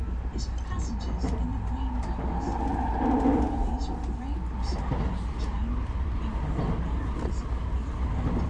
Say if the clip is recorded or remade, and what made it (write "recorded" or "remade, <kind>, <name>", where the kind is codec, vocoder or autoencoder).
recorded